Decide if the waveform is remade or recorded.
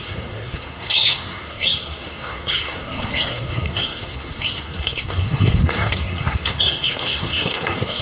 remade